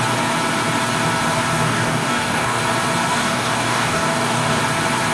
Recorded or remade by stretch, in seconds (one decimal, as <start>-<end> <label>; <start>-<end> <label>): 0.0-1.5 recorded; 1.5-2.6 remade; 2.6-3.1 recorded; 3.1-4.6 remade; 4.6-5.1 recorded